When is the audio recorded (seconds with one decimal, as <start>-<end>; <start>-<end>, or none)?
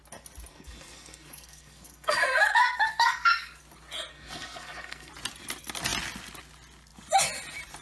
0.0-0.5; 3.6-4.1; 5.1-7.8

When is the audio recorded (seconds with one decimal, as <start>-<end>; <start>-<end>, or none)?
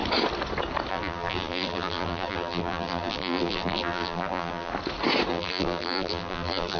0.0-0.9; 4.7-5.3